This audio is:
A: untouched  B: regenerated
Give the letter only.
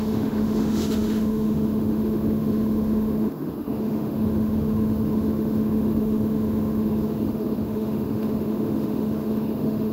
B